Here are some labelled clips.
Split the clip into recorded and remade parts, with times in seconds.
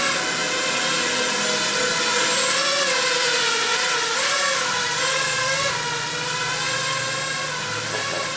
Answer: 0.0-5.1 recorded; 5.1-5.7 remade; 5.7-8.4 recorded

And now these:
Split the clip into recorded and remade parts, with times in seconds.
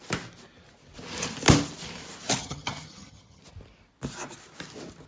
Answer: 0.0-2.4 recorded; 2.4-3.4 remade; 3.4-5.1 recorded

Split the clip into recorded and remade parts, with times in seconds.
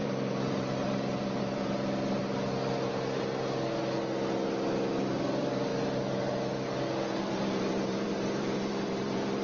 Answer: 0.0-2.2 remade; 2.2-5.0 recorded; 5.0-5.7 remade; 5.7-7.3 recorded; 7.3-9.4 remade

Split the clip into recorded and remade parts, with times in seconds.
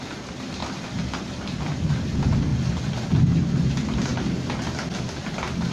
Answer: 0.0-5.7 recorded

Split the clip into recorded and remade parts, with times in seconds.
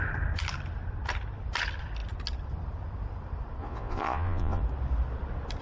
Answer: 0.0-3.6 recorded; 3.6-4.6 remade; 4.6-5.6 recorded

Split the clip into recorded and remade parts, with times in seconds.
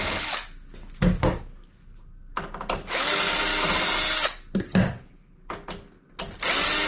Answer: 0.0-6.9 recorded